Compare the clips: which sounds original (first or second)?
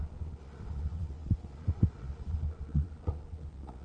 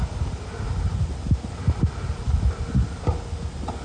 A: second